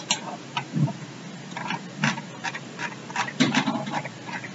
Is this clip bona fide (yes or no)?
no